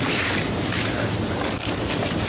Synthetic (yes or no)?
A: no